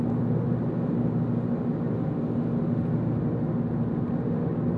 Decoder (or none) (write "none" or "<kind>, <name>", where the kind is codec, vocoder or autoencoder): none